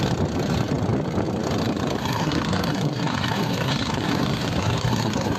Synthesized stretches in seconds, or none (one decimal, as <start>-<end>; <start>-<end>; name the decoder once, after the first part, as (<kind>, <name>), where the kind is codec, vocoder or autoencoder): 2.0-5.4 (codec, SNAC)